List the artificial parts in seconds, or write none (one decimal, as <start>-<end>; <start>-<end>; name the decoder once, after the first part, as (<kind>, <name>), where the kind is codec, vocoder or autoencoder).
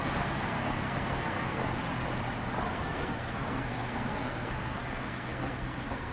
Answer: 0.0-1.6 (codec, SNAC); 2.7-6.1